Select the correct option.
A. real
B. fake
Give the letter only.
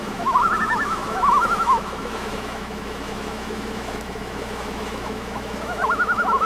B